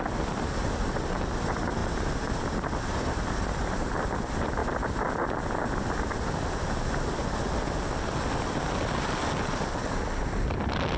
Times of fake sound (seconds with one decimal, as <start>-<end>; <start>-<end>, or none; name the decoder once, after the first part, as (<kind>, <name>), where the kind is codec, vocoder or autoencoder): none